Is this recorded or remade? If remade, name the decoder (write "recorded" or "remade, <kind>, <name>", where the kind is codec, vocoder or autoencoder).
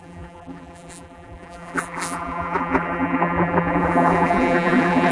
remade, vocoder, BigVGAN v2